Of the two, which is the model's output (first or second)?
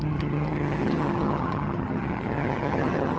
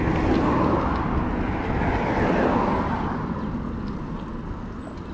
first